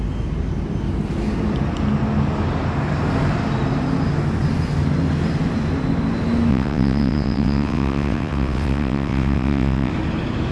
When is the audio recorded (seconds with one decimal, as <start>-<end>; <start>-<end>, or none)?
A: 0.0-6.5; 9.9-10.5